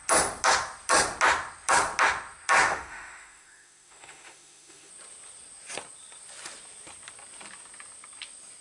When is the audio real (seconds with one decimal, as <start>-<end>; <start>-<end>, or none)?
0.0-2.7; 4.9-8.6